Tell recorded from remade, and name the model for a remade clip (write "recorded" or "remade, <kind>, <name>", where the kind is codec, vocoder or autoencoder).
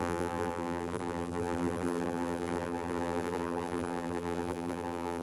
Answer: remade, vocoder, BigVGAN v2